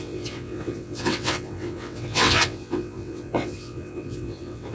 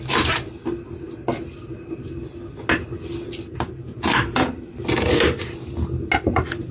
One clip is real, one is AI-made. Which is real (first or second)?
second